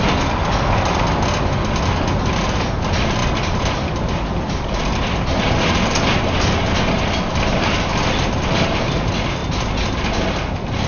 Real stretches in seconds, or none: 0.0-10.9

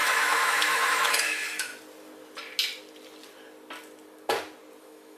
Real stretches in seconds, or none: 1.7-4.8

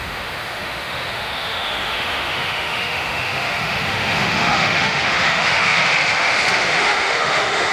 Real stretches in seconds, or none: none

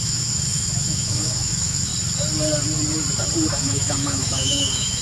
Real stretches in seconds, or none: 1.9-3.5

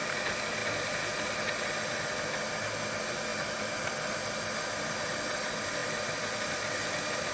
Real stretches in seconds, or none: 0.0-7.3

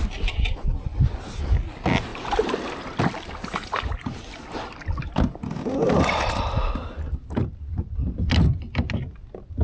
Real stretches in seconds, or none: 0.0-9.6